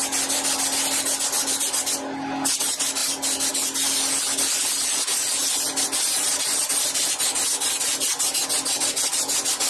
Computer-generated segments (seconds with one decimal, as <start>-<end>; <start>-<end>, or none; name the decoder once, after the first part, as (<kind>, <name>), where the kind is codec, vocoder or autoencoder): none

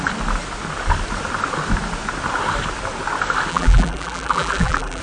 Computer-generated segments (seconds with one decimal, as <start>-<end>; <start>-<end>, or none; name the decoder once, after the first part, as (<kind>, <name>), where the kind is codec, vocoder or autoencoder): 3.5-5.0 (vocoder, BigVGAN v2)

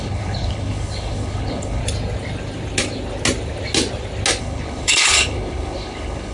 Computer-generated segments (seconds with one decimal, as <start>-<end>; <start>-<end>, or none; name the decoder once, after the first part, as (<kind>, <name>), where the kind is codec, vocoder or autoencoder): 0.0-1.8 (codec, HILCodec); 4.4-6.3

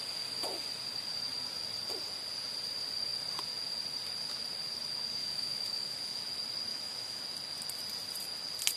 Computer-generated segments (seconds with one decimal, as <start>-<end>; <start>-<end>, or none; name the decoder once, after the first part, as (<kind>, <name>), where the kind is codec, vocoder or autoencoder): 5.2-6.2 (autoencoder, DAC-VAE); 6.7-7.2

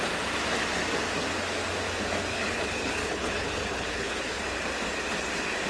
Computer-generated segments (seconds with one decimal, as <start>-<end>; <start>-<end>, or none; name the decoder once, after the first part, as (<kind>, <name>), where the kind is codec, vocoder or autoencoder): 2.3-4.4 (codec, HILCodec)

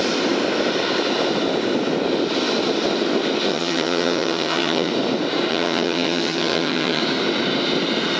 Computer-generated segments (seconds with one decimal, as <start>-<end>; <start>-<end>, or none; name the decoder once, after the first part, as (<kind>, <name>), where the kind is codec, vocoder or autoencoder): 3.5-4.9 (vocoder, HiFi-GAN); 5.5-7.0

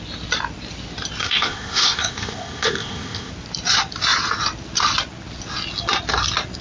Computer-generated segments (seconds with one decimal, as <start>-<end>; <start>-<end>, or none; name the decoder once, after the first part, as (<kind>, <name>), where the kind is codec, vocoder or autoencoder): 1.2-3.3 (codec, ZipCodec)